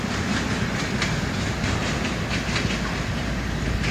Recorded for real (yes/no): yes